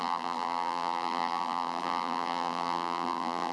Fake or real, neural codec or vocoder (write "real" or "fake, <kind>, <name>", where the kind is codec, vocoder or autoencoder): fake, vocoder, BigVGAN v2